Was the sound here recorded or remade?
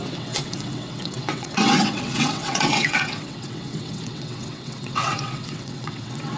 remade